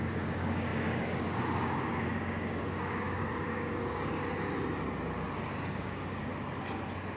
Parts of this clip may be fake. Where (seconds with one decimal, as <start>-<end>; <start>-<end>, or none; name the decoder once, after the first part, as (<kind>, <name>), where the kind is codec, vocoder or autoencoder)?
0.0-4.2 (codec, DAC); 5.6-6.3